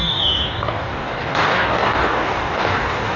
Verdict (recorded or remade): remade